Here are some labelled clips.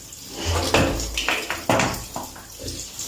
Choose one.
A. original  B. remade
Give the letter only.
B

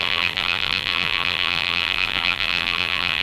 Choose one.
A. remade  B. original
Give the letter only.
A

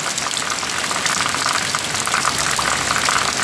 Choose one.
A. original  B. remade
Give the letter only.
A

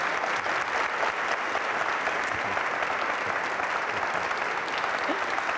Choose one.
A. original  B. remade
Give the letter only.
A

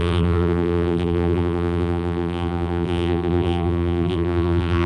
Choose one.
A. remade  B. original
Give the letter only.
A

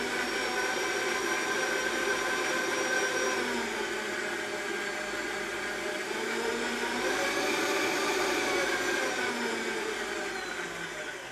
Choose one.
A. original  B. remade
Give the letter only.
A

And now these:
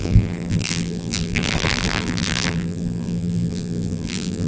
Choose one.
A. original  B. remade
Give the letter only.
B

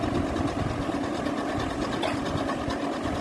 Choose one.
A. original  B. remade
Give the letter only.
A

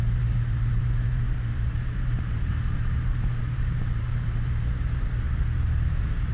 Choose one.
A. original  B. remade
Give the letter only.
B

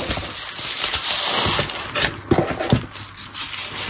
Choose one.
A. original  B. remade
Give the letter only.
A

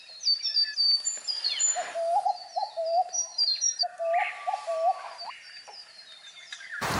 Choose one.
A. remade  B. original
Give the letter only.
A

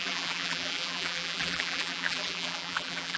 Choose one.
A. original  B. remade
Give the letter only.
B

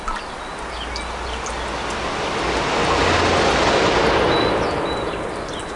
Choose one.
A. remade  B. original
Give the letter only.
B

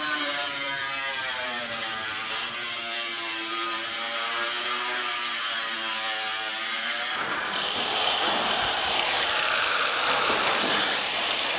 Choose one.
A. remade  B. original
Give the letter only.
A